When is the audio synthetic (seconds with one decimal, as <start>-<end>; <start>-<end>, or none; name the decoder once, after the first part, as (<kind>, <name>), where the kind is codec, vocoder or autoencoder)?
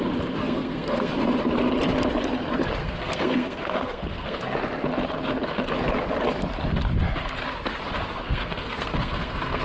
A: 0.4-1.1 (codec, SNAC); 2.8-4.4; 8.1-9.6